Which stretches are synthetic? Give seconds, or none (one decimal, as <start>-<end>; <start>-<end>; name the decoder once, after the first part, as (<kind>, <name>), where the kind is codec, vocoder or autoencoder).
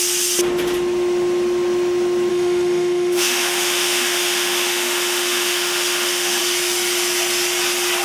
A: 2.3-6.4 (autoencoder, DAC-VAE)